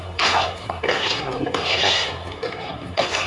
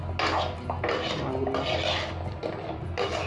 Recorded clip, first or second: second